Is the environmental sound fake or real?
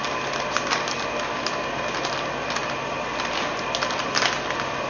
real